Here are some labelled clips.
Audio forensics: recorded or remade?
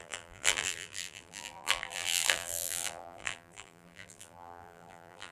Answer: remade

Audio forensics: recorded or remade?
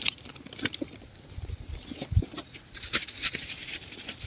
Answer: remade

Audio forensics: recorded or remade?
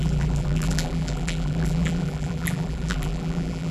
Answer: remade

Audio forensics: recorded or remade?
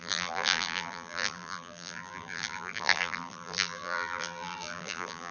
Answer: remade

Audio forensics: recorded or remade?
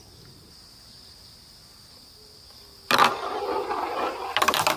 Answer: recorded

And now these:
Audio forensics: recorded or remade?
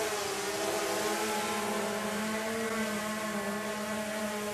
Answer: recorded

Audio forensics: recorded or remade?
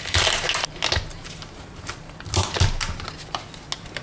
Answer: recorded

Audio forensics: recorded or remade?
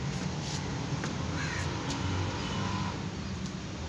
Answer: recorded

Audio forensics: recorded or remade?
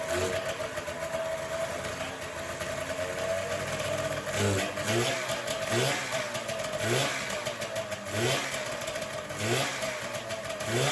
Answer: recorded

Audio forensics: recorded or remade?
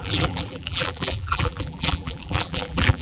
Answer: remade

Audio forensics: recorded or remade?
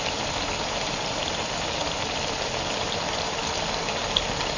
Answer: recorded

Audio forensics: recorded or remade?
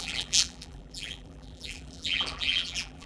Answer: remade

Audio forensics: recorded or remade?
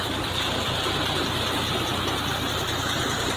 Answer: recorded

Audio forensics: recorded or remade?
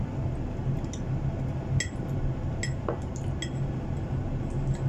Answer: recorded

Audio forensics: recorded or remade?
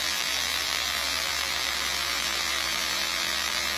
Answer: remade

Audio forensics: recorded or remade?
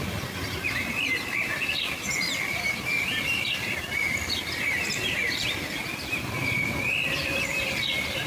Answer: remade